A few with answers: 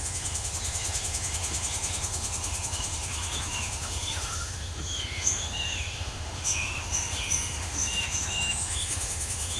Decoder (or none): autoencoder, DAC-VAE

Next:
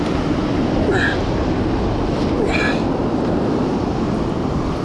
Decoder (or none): none